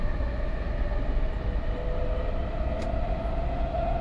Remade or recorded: recorded